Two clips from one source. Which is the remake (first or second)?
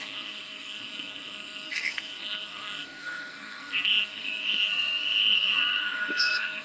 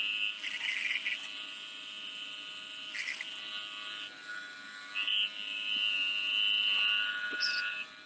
first